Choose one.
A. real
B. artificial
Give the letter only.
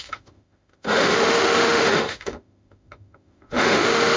B